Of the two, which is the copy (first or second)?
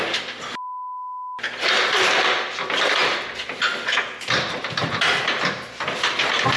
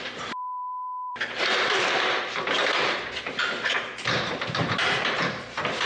second